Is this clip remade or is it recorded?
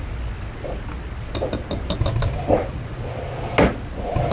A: recorded